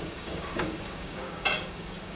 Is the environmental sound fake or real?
fake